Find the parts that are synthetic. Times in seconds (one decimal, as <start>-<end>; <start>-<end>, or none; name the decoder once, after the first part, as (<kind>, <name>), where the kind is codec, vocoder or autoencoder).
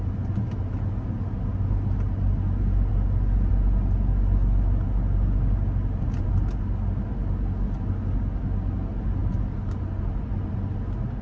none